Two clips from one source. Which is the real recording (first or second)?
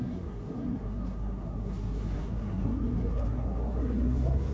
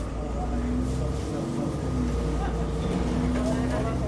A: second